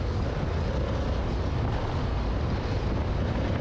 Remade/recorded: recorded